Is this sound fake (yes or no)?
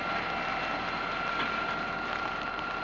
no